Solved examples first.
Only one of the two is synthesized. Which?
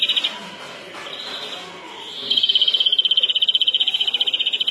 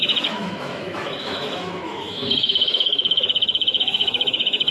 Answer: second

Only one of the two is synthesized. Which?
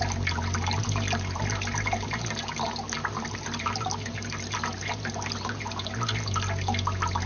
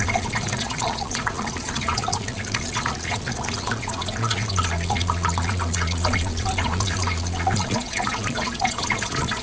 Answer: second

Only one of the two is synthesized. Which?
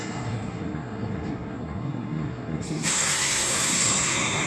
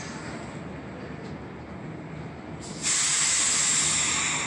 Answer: first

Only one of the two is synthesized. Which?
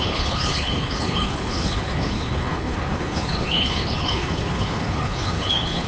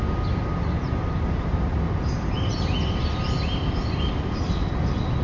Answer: first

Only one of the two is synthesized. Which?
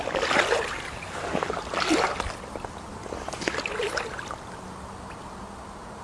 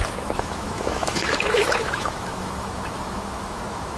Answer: second